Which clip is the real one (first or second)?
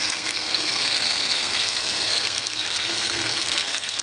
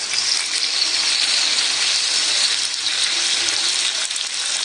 second